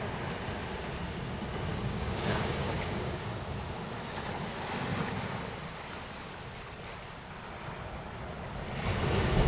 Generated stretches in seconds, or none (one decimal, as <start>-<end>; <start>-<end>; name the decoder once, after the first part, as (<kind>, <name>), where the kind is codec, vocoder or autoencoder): 1.7-3.2 (codec, DAC)